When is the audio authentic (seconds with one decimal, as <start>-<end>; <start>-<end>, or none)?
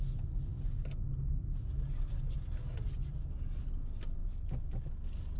0.0-4.2; 4.9-5.4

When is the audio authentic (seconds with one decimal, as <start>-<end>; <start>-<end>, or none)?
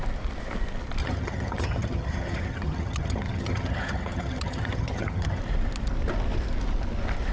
0.0-1.0; 5.4-7.3